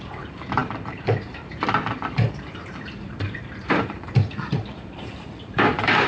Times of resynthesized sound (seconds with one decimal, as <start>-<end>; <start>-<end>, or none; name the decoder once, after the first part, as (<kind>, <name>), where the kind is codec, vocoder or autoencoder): 0.0-6.1 (vocoder, BigVGAN v2)